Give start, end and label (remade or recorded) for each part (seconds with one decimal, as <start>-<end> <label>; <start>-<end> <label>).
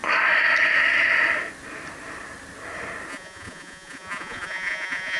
0.0-3.1 recorded; 3.1-5.2 remade